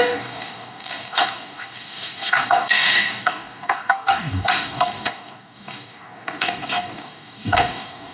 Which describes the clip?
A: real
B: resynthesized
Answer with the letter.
B